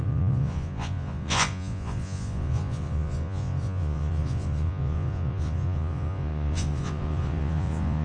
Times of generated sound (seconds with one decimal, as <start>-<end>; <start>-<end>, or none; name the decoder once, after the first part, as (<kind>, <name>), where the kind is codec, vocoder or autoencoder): 0.0-8.0 (vocoder, Vocos)